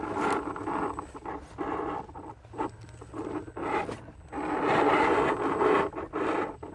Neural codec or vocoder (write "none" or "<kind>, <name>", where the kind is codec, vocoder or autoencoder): none